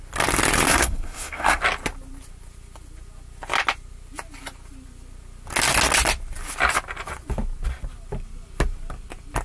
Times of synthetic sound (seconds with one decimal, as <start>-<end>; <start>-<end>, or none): 0.7-1.6